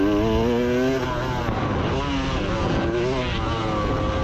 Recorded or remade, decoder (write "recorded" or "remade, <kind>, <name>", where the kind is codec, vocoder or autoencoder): recorded